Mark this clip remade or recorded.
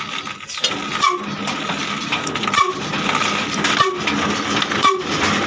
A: recorded